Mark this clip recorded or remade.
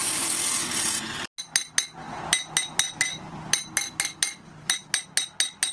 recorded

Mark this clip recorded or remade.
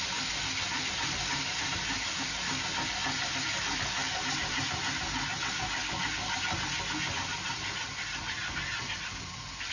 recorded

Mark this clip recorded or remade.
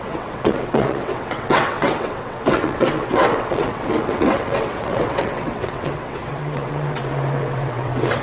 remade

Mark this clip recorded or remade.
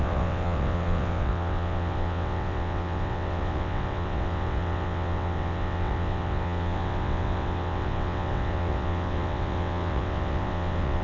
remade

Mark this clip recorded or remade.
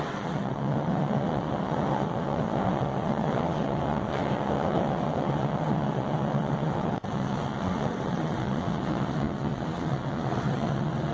remade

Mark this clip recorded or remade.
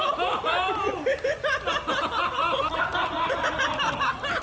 recorded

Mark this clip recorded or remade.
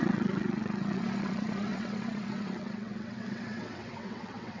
remade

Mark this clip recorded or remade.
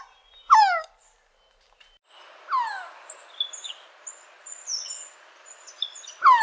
recorded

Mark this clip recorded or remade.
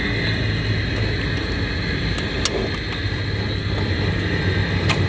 recorded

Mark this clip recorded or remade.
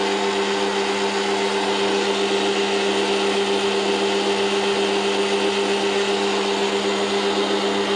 recorded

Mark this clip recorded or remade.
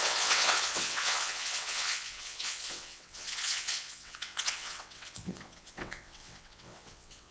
remade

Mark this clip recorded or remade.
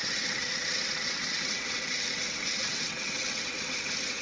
remade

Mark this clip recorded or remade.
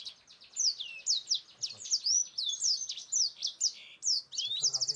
recorded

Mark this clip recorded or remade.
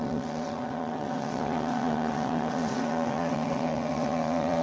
remade